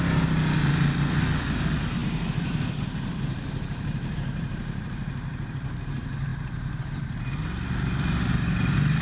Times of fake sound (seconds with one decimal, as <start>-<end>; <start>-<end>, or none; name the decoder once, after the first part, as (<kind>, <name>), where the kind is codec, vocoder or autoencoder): none